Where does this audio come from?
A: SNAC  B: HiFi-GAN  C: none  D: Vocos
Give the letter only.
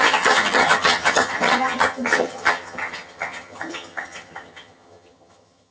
B